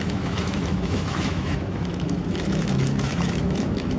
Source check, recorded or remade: remade